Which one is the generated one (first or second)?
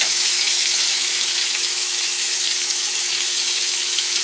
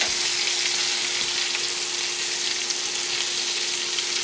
first